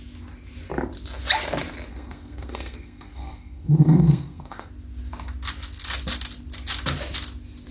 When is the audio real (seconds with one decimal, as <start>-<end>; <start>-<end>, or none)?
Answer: 0.0-1.9; 4.7-7.7